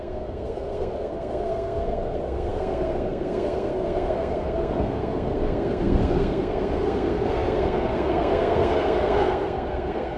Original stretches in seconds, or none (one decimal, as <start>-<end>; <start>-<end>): none